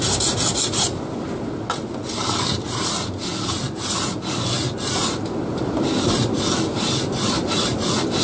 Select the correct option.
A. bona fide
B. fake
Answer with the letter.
A